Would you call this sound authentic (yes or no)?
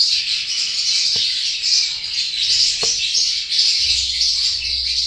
yes